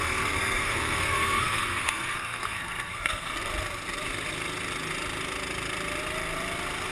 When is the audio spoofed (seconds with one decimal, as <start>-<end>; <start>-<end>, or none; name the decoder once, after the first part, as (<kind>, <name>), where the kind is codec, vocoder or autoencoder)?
0.0-3.5 (codec, SNAC)